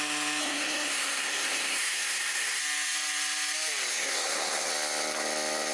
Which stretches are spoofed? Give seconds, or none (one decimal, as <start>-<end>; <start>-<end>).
0.4-2.6; 3.9-4.7